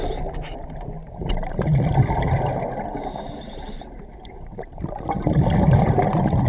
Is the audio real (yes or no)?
yes